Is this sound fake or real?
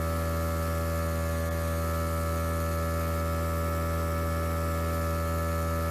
real